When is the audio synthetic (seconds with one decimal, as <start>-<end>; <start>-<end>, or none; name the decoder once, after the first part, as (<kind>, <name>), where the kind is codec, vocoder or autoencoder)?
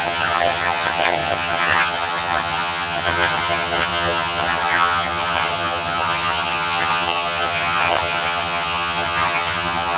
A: 0.0-10.0 (vocoder, HiFi-GAN)